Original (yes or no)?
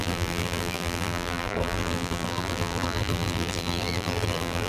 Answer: no